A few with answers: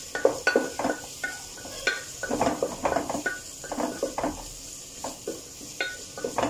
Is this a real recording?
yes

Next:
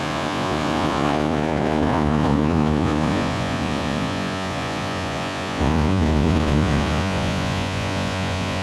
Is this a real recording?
no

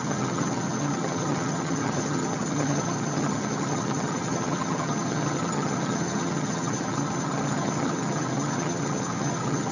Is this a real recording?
no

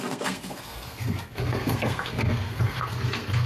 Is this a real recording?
no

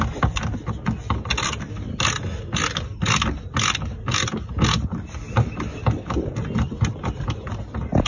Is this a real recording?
yes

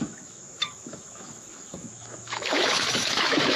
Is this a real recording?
no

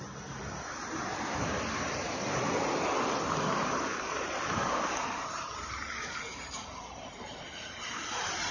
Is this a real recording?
no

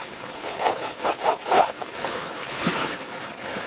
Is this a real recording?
no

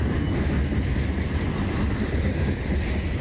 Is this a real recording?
yes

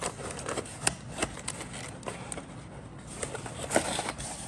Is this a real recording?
yes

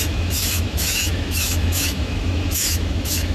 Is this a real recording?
no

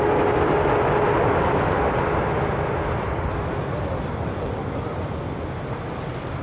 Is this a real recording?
yes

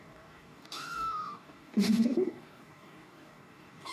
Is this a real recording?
no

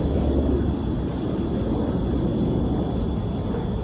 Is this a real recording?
yes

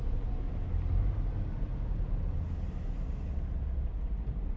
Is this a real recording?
yes